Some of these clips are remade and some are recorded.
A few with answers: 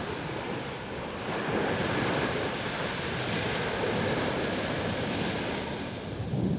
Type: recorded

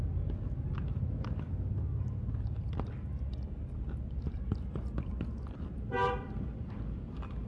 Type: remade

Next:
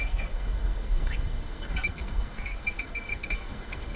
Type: remade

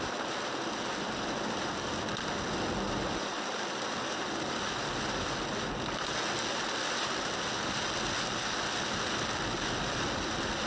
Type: recorded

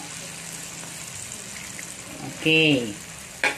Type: recorded